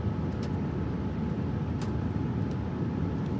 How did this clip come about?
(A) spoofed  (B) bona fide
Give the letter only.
B